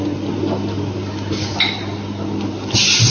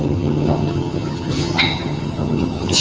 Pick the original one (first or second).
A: first